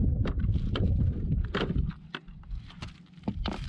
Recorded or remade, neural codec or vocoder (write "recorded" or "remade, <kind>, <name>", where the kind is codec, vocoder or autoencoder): recorded